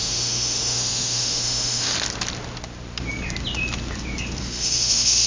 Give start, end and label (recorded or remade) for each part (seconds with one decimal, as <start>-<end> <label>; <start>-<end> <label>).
0.0-1.9 remade; 1.9-4.4 recorded; 4.4-5.3 remade

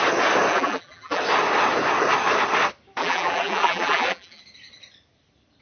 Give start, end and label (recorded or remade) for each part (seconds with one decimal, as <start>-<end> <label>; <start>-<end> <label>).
0.0-0.5 recorded; 0.5-1.2 remade; 1.2-3.0 recorded; 3.0-4.4 remade; 4.4-5.6 recorded

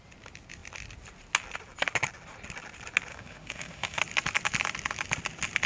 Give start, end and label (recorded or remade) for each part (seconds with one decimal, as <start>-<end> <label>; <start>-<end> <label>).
0.0-3.1 recorded; 3.1-4.0 remade; 4.0-5.7 recorded

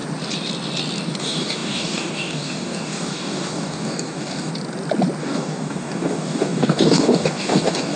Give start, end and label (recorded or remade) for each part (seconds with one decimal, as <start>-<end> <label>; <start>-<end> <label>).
0.0-1.2 recorded; 1.2-4.5 remade; 4.5-5.2 recorded; 5.2-8.0 remade

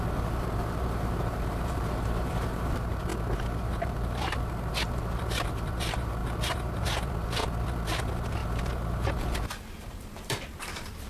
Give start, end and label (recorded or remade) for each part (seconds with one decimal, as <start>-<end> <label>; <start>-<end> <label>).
0.0-3.1 remade; 3.1-3.6 recorded; 3.6-7.4 remade; 7.4-8.0 recorded; 8.0-11.1 remade

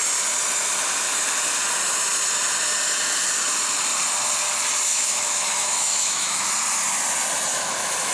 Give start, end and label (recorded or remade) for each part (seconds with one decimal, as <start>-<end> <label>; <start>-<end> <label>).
0.0-4.9 recorded; 4.9-6.4 remade; 6.4-7.5 recorded; 7.5-8.1 remade